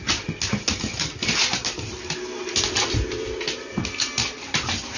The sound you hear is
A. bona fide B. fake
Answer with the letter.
A